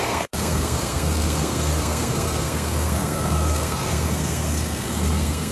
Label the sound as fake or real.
fake